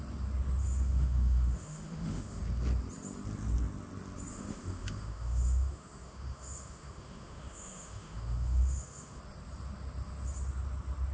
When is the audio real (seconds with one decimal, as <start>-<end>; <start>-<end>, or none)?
0.0-0.6; 2.4-4.3; 9.2-11.1